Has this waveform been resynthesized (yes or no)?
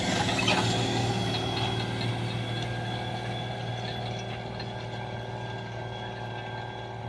no